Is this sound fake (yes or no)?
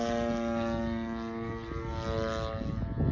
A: no